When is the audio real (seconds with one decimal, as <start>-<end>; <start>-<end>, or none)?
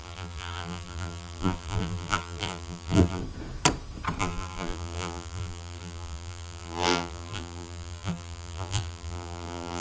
3.2-4.2